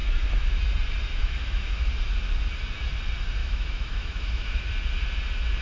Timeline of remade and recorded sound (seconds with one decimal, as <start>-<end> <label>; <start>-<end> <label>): 0.0-0.6 remade; 0.6-1.2 recorded; 1.2-1.9 remade; 1.9-3.4 recorded; 3.4-4.7 remade; 4.7-5.6 recorded